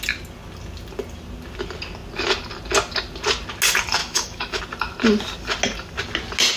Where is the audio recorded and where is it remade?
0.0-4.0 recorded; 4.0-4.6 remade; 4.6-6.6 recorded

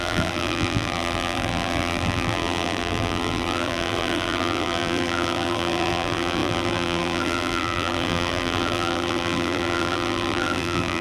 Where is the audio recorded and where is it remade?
0.0-11.0 remade

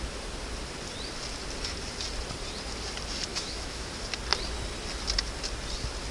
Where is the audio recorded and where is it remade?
0.0-3.3 recorded; 3.3-3.9 remade; 3.9-6.1 recorded